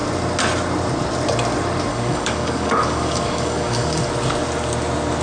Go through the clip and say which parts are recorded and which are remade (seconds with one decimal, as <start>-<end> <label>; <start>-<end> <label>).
0.0-1.9 recorded; 1.9-4.1 remade; 4.1-5.2 recorded